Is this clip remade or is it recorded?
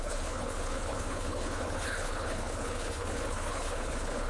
remade